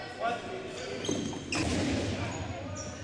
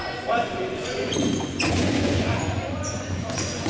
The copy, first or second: second